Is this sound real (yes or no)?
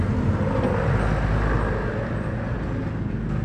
yes